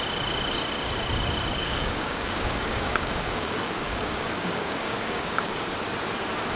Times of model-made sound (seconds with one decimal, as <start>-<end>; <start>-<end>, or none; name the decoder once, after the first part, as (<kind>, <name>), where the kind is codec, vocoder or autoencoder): 1.6-5.6 (codec, DAC)